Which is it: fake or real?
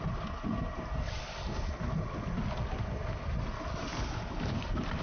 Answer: real